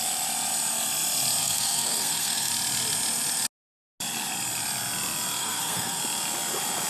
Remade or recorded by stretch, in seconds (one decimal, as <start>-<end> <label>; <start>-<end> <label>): 0.0-1.4 recorded; 1.4-2.5 remade; 2.5-5.4 recorded; 5.4-6.0 remade; 6.0-6.9 recorded